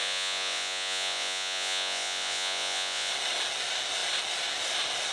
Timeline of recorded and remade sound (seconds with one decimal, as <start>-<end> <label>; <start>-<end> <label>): 0.0-3.1 remade; 3.1-5.1 recorded